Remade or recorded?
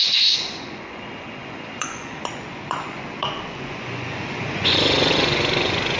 remade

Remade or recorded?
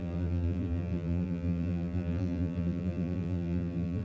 remade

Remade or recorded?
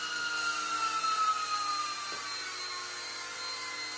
recorded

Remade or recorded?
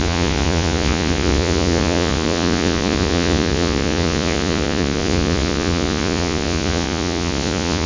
remade